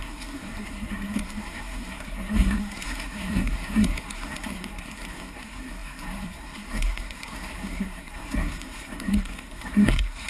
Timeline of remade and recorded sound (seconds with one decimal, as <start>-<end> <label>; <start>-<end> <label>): 0.0-10.3 remade